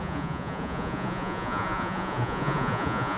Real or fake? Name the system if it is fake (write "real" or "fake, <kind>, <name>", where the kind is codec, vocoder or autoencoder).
fake, vocoder, Vocos